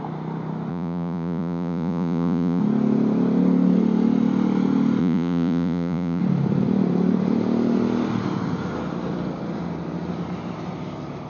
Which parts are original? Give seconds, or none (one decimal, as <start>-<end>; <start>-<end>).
0.0-0.7; 2.6-5.0; 6.2-11.3